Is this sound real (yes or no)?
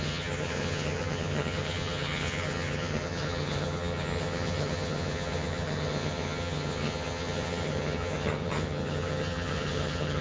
no